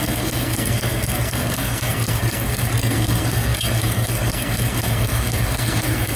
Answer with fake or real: fake